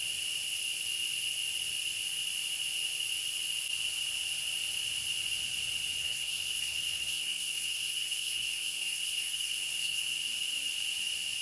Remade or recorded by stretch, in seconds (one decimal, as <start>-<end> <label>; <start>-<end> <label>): 0.0-6.0 recorded; 6.0-10.2 remade; 10.2-11.4 recorded